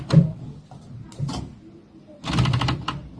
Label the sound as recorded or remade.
recorded